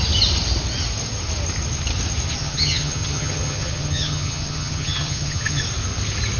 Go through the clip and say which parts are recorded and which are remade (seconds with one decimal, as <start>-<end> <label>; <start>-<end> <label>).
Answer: 0.0-2.4 recorded; 2.4-5.6 remade; 5.6-6.4 recorded